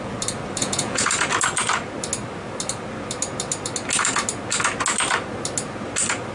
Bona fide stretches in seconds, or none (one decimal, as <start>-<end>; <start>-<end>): 0.0-0.6; 1.1-6.3